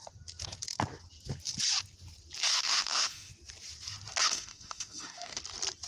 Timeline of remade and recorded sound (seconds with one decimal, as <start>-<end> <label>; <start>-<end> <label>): 0.0-2.5 recorded; 2.5-3.3 remade; 3.3-4.2 recorded; 4.2-5.4 remade; 5.4-5.9 recorded